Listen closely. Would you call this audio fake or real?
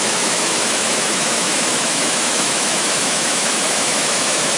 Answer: fake